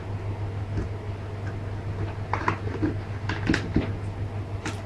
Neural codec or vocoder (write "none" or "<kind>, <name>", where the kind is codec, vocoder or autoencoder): none